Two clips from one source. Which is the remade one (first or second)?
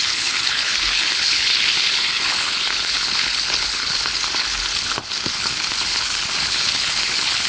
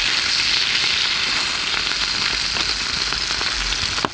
first